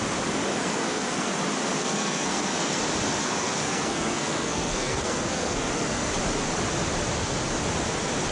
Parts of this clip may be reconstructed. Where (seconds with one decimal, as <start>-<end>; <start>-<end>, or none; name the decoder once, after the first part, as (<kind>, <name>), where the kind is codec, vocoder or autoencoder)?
0.5-1.3 (codec, SNAC); 1.8-2.8; 3.2-6.1

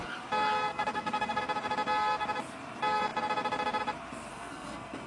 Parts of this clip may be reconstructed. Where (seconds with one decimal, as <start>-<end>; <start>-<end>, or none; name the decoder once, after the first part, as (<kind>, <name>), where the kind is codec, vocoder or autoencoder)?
0.7-1.4 (codec, SNAC); 4.3-5.1

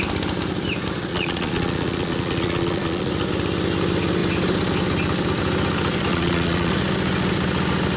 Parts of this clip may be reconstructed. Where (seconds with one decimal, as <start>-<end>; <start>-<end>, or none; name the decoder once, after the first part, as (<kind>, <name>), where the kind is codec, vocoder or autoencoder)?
1.1-3.1 (vocoder, Vocos); 6.1-6.7

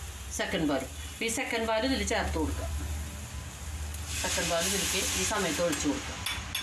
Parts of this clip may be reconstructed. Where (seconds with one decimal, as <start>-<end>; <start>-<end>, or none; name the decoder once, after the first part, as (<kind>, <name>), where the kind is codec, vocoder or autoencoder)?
none

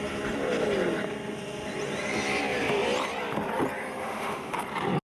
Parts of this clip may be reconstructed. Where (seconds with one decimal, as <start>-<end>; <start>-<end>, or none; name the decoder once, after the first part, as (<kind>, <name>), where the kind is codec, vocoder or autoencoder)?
4.0-4.6 (autoencoder, DAC-VAE)